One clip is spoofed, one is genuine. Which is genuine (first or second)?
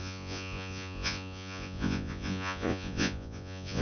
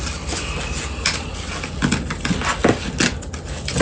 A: second